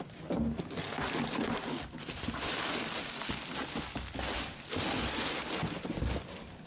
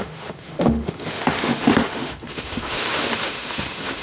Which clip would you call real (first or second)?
first